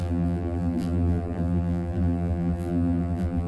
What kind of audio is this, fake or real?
fake